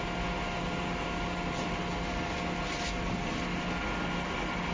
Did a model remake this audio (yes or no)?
no